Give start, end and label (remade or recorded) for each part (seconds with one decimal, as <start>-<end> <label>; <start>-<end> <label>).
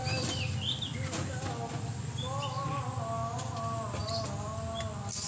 0.0-5.3 recorded